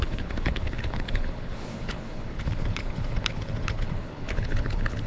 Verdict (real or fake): fake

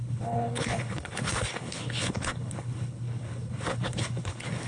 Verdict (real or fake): fake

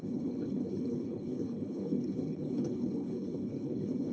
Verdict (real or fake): fake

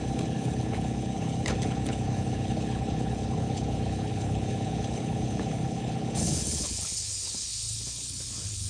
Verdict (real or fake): fake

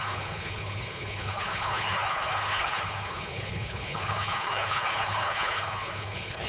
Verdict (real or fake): fake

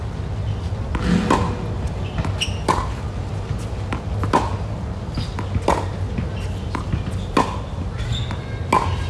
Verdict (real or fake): real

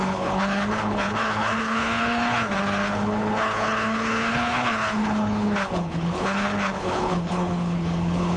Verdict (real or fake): fake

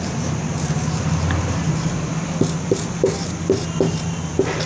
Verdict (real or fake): real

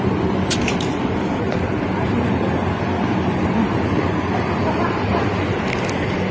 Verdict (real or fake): real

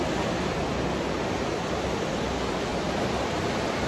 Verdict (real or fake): real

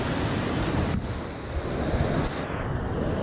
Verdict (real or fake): real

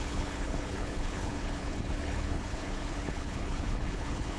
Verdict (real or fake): fake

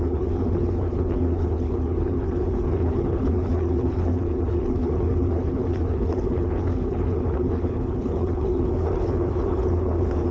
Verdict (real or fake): fake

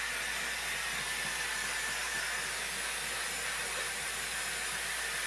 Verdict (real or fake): real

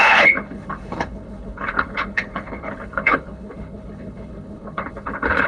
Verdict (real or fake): fake